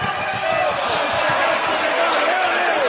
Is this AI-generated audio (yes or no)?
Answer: no